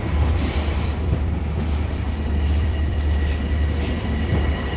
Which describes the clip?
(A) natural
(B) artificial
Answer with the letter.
B